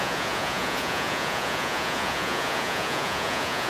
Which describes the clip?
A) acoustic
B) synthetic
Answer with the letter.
B